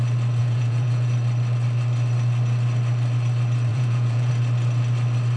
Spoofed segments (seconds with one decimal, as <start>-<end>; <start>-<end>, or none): 0.4-1.1; 3.7-4.3